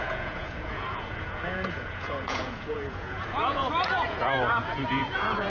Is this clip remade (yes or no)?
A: yes